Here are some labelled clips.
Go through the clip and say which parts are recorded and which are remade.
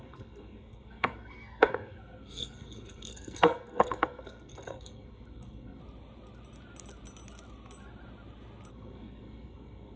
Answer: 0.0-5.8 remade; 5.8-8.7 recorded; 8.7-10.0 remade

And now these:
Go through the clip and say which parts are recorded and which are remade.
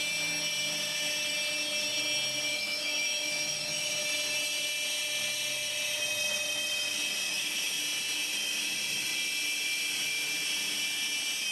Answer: 0.0-2.5 recorded; 2.5-4.0 remade; 4.0-7.2 recorded; 7.2-7.8 remade; 7.8-11.5 recorded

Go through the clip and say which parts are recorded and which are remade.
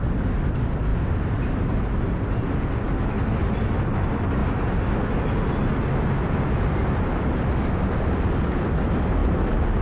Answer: 0.0-0.9 recorded; 0.9-1.8 remade; 1.8-9.8 recorded